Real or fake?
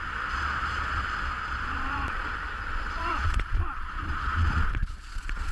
fake